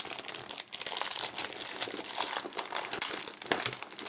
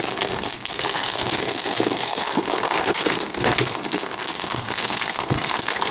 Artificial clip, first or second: second